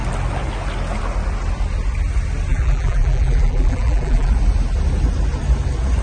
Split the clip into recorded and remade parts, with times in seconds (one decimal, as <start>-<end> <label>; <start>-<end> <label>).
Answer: 0.0-2.5 recorded; 2.5-4.3 remade; 4.3-6.0 recorded